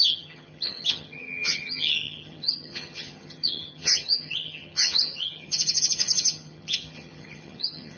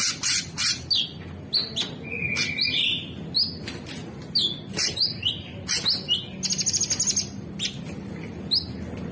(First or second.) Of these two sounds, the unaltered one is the second